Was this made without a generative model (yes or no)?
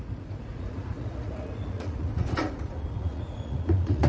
no